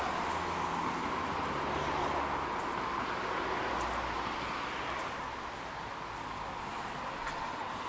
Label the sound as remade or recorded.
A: recorded